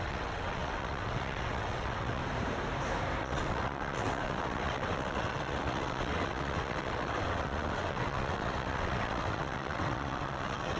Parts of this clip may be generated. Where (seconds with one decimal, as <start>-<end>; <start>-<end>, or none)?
0.0-2.2; 3.2-10.8